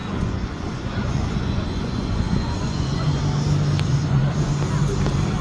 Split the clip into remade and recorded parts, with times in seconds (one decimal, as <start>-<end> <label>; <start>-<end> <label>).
0.0-3.2 remade; 3.2-3.9 recorded; 3.9-4.5 remade; 4.5-5.4 recorded